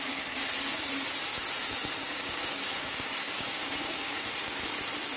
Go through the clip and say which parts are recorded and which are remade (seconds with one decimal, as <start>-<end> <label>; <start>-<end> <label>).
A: 0.0-2.0 recorded; 2.0-4.3 remade; 4.3-5.2 recorded